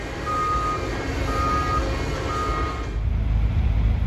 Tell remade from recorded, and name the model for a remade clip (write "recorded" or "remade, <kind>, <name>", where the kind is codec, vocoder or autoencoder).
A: recorded